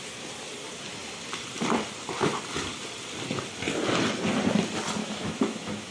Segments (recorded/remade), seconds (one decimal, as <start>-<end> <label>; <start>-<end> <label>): 0.0-5.0 recorded; 5.0-5.9 remade